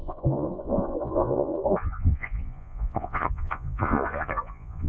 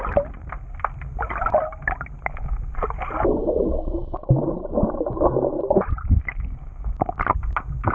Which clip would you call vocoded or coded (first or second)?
first